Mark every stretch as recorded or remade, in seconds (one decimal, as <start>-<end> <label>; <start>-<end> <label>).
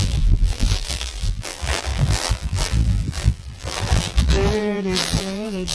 0.0-5.7 remade